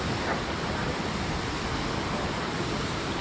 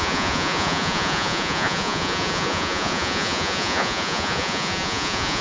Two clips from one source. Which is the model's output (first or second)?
second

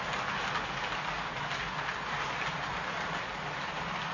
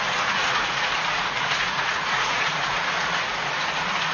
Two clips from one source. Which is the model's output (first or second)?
second